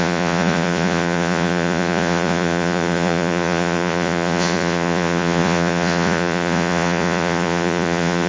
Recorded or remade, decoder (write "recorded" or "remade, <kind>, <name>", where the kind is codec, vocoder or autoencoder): remade, vocoder, Vocos